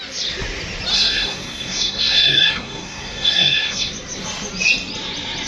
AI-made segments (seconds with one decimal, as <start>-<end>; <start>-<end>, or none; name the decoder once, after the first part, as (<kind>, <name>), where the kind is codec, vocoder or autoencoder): 0.9-3.9 (codec, SNAC)

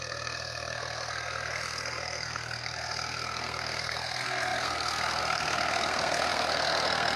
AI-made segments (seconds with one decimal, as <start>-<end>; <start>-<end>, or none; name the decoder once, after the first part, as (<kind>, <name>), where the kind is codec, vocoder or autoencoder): 0.0-7.2 (codec, SNAC)

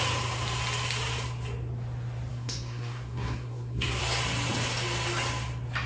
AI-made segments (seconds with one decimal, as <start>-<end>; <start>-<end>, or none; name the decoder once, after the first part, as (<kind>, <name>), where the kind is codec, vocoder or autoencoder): 2.3-4.0 (codec, SNAC)

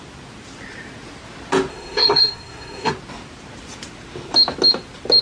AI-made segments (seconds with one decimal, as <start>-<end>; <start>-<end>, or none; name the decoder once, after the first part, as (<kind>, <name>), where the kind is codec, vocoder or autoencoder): 1.7-2.9 (codec, SNAC)

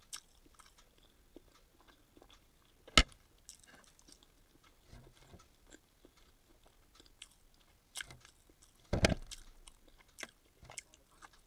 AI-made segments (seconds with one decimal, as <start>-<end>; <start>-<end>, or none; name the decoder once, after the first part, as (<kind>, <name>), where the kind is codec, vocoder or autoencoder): none

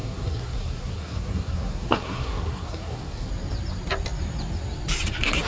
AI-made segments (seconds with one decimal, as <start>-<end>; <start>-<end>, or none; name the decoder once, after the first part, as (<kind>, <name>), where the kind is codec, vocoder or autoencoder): 0.0-3.3 (codec, SNAC)

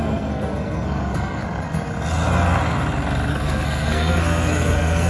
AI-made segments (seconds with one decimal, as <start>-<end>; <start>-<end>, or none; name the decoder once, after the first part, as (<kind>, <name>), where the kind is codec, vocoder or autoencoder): 0.0-1.4 (codec, SNAC); 3.3-5.1

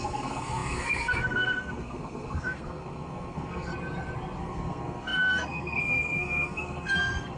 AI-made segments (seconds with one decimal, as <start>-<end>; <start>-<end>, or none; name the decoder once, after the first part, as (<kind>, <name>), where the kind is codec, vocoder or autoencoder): 0.0-3.7 (codec, SNAC); 4.4-7.4